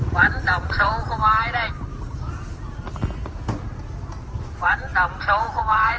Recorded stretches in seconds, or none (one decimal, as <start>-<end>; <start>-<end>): 0.9-4.4; 4.9-5.4